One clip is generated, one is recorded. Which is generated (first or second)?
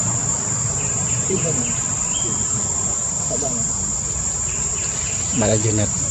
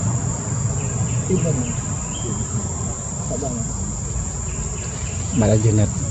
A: first